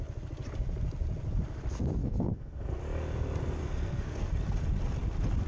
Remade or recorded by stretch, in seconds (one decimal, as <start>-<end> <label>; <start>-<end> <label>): 0.0-2.0 recorded; 2.0-2.8 remade; 2.8-3.6 recorded; 3.6-4.3 remade; 4.3-5.5 recorded